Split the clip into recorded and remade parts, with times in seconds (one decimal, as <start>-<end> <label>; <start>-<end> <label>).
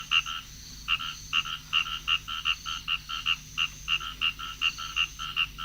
0.0-5.6 recorded